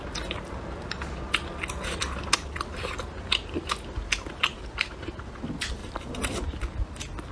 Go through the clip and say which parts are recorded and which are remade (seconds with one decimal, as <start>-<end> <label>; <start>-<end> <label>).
0.0-5.8 recorded; 5.8-6.6 remade; 6.6-7.3 recorded